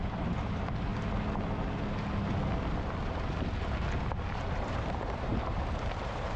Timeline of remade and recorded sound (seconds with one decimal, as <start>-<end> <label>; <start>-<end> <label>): 0.0-0.9 remade; 0.9-4.5 recorded; 4.5-6.4 remade